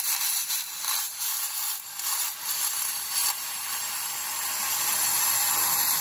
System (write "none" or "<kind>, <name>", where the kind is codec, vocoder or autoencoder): none